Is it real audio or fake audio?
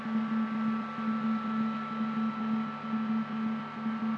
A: real